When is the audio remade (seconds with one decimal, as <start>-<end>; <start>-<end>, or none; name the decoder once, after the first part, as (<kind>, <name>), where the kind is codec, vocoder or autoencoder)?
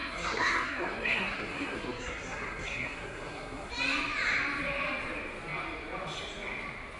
0.0-3.7 (codec, SNAC)